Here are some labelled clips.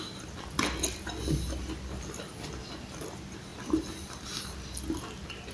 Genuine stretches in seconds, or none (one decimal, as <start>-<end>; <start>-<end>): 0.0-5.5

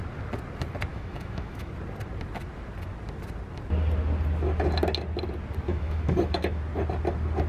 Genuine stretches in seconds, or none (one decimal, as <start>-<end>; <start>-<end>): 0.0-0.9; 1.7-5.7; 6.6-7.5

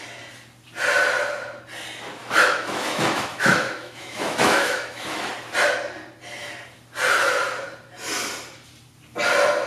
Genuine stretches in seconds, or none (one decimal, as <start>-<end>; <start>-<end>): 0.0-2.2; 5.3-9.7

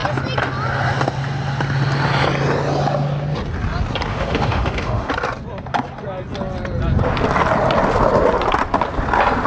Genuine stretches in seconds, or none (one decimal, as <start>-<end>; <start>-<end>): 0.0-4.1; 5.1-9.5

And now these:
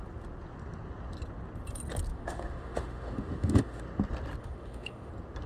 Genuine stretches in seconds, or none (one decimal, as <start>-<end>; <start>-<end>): 0.0-2.1; 3.8-4.4; 5.1-5.5

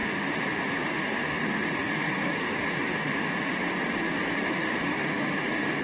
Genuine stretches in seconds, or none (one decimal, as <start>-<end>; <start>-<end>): 3.5-4.5

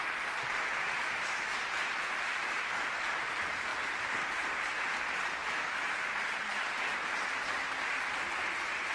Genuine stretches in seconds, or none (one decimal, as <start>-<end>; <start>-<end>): 0.0-1.0; 1.6-5.4; 5.9-8.9